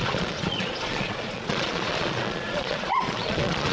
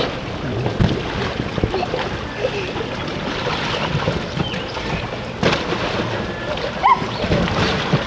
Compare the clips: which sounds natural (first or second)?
second